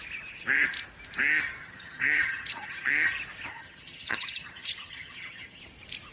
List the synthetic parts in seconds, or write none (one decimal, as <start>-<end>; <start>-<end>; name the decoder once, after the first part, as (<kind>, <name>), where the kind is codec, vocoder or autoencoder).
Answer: 1.6-3.1 (vocoder, HiFi-GAN); 3.5-5.6

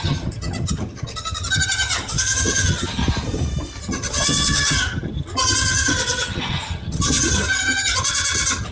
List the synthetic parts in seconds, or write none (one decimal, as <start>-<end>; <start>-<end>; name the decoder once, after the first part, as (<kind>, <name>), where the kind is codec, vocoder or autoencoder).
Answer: 0.0-3.0 (vocoder, HiFi-GAN); 3.8-8.7

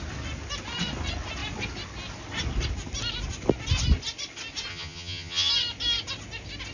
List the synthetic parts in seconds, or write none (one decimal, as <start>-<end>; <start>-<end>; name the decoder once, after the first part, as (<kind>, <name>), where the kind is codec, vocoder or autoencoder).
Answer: 4.7-5.5 (vocoder, HiFi-GAN)

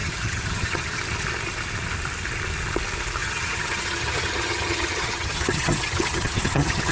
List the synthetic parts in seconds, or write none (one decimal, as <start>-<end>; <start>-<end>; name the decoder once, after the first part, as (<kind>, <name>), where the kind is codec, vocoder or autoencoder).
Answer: 0.0-1.0 (vocoder, HiFi-GAN); 3.2-6.9

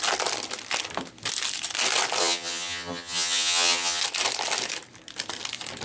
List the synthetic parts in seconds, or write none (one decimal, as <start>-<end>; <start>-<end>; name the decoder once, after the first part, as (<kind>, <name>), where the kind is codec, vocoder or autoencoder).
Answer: 2.2-4.0 (vocoder, HiFi-GAN)

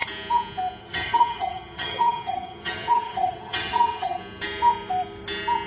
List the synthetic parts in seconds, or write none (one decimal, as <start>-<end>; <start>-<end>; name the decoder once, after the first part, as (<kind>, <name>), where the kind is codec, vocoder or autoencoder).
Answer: 0.8-4.2 (vocoder, HiFi-GAN)

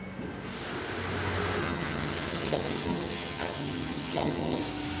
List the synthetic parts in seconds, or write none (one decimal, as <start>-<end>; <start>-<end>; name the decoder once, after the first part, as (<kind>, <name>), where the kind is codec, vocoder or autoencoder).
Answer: 1.6-4.6 (vocoder, HiFi-GAN)

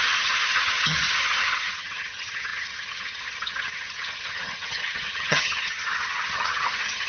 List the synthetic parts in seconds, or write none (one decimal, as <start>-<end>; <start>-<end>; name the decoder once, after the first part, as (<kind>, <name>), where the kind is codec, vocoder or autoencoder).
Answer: 0.0-7.1 (vocoder, HiFi-GAN)